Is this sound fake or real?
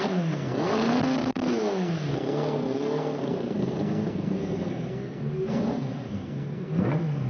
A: fake